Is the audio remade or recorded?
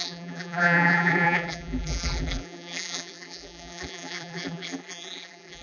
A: remade